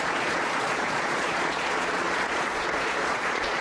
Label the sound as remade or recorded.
remade